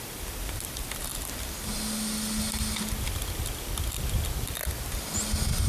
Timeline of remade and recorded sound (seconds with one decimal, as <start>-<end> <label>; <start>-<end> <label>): 0.0-5.7 recorded